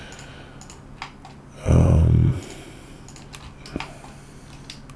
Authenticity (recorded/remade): recorded